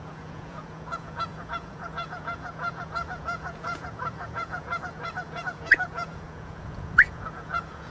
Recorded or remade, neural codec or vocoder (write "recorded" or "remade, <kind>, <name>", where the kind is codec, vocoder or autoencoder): remade, vocoder, Vocos